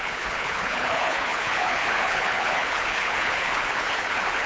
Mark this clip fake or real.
fake